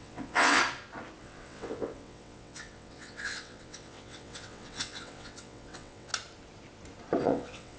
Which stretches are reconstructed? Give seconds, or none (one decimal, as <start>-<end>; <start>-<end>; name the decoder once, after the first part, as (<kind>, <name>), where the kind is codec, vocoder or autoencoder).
0.0-0.6 (vocoder, WaveNeXt); 1.2-6.1; 7.2-7.8